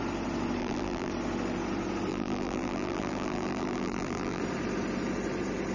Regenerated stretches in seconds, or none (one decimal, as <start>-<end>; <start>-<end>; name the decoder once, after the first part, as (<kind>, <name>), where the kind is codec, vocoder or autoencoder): 0.6-1.1 (vocoder, BigVGAN v2); 2.1-4.4